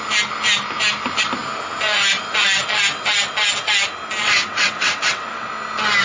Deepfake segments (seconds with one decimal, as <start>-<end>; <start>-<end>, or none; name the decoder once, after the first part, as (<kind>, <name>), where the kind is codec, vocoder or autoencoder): 4.2-5.5 (vocoder, WaveNeXt)